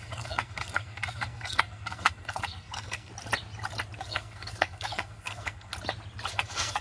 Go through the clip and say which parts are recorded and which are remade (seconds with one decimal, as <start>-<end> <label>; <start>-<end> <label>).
0.0-3.1 remade; 3.1-4.0 recorded; 4.0-5.7 remade; 5.7-6.3 recorded; 6.3-6.8 remade